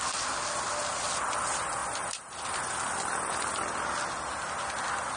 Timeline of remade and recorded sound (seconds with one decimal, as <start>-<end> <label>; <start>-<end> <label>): 0.0-5.2 recorded